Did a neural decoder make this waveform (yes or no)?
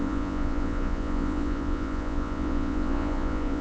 yes